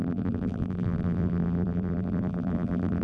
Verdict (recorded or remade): remade